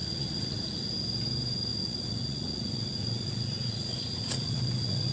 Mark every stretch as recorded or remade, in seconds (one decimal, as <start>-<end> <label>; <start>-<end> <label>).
0.0-0.9 remade; 0.9-1.7 recorded; 1.7-5.1 remade